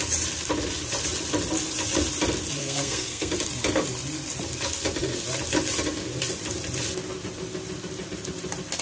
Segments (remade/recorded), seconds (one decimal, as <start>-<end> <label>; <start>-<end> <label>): 0.0-2.6 recorded; 2.6-3.3 remade; 3.3-8.8 recorded